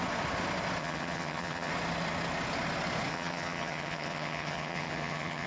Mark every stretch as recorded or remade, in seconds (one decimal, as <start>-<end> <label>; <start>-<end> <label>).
0.0-0.8 recorded; 0.8-1.7 remade; 1.7-3.1 recorded; 3.1-5.5 remade